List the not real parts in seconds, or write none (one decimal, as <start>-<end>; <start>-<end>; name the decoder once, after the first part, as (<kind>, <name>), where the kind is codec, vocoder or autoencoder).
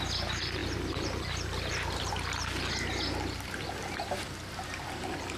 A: 0.6-2.1 (vocoder, BigVGAN v2)